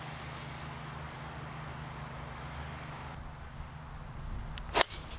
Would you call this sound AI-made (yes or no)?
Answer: no